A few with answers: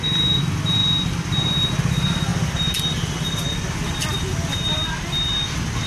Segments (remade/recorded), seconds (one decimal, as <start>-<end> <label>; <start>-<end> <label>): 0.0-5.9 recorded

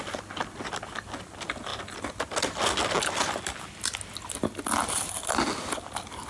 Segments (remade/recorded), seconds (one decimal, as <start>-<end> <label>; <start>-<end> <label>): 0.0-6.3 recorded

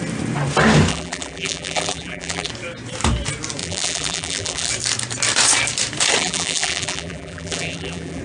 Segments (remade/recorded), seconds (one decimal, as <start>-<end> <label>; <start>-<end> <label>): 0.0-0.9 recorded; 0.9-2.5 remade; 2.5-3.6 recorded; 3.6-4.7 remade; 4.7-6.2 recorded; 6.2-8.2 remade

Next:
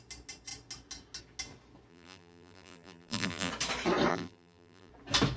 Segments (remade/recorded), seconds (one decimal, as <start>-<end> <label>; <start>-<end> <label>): 0.0-1.9 recorded; 1.9-3.5 remade; 3.5-4.1 recorded; 4.1-4.9 remade; 4.9-5.4 recorded

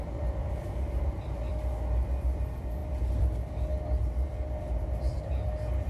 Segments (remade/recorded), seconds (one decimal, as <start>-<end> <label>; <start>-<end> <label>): 0.0-0.4 recorded; 0.4-1.5 remade; 1.5-5.9 recorded

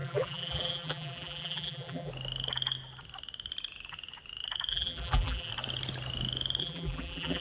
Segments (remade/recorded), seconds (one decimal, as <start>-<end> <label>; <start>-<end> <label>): 0.0-2.1 remade; 2.1-4.7 recorded; 4.7-5.5 remade; 5.5-6.6 recorded; 6.6-7.4 remade